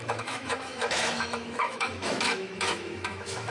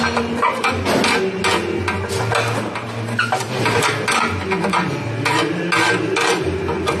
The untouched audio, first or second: second